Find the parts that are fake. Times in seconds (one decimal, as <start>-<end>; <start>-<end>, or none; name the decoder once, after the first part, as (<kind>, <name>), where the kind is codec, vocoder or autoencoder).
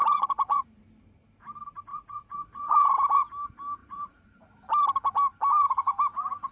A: 0.0-0.8 (vocoder, Vocos); 1.9-2.9; 3.8-4.5